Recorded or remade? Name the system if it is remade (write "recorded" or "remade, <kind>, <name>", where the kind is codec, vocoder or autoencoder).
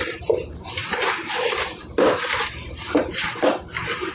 recorded